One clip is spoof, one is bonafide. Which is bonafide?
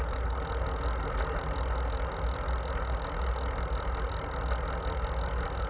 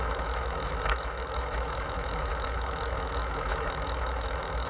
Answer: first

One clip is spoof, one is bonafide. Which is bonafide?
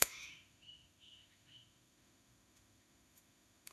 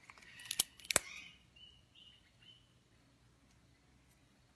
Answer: second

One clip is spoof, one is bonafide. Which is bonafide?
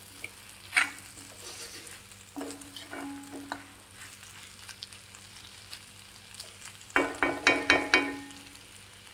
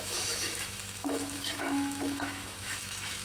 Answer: first